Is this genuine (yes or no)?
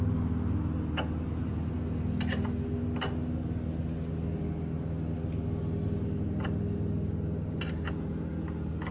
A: yes